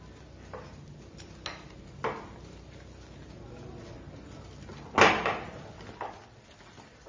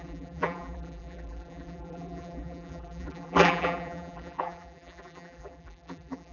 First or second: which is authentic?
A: first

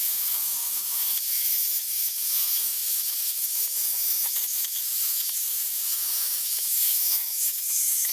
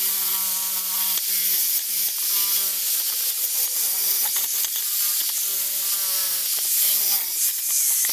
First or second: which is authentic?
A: second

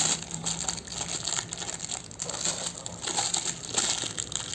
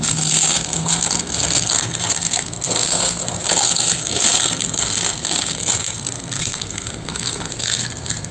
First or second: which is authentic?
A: first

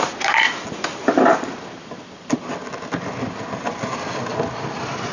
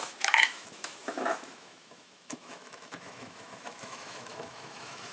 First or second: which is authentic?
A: first